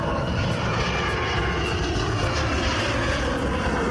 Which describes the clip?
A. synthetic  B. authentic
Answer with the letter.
B